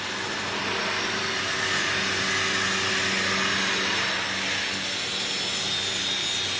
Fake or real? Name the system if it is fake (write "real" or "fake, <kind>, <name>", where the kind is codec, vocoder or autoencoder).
real